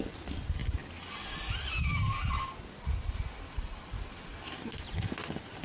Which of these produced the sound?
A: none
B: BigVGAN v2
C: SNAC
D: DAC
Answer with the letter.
A